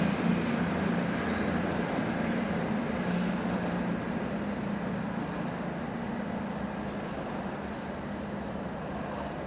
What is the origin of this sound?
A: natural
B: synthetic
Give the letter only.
A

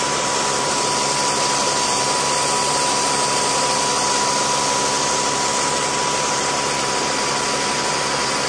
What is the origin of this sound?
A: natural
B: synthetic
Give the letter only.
A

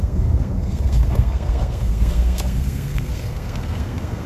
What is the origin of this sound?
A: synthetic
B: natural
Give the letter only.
A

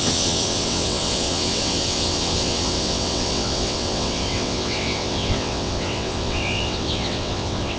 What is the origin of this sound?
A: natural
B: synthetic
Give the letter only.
B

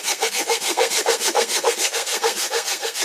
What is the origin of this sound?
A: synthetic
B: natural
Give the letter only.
A